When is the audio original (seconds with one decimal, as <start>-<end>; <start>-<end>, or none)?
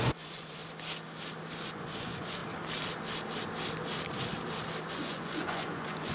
0.6-1.6; 2.4-4.9